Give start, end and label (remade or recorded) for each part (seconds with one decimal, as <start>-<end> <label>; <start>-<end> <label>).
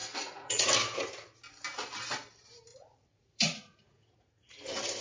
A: 0.0-0.7 remade; 0.7-2.7 recorded; 2.7-4.5 remade; 4.5-5.0 recorded